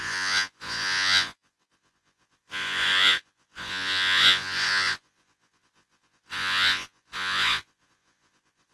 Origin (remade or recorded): remade